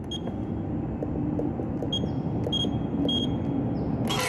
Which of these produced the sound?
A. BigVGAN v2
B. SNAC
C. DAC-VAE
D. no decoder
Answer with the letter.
D